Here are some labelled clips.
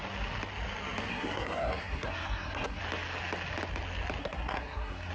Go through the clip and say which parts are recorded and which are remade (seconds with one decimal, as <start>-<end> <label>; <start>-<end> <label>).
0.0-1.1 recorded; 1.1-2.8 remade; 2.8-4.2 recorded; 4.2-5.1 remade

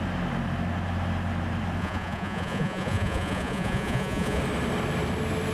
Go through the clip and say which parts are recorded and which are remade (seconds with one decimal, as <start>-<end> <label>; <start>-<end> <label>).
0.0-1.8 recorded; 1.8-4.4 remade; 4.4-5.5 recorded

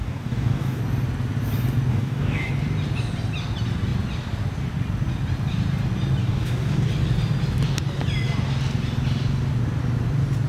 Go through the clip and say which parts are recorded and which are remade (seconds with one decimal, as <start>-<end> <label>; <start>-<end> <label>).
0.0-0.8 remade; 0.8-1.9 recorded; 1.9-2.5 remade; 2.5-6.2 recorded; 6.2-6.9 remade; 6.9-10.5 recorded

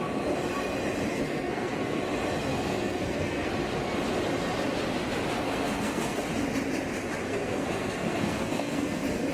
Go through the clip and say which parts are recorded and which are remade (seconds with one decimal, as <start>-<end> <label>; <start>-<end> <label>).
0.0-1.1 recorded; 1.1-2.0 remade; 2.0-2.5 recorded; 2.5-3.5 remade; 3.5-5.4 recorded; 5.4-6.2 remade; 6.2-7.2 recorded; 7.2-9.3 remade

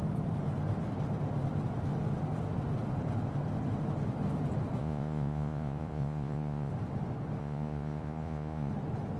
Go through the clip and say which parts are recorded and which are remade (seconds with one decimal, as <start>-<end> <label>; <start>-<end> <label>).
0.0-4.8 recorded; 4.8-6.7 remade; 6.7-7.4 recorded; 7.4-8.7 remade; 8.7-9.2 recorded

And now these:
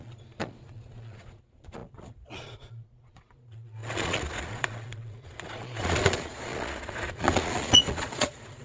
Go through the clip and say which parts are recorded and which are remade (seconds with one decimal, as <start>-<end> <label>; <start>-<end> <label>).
0.0-8.6 remade

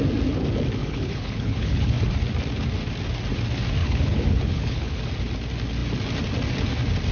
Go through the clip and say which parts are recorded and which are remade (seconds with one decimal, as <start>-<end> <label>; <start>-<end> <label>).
0.0-0.8 recorded; 0.8-1.9 remade; 1.9-3.8 recorded; 3.8-5.0 remade; 5.0-7.1 recorded